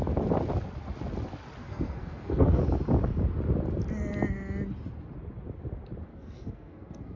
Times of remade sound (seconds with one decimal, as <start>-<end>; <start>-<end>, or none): 1.6-2.6; 6.1-7.2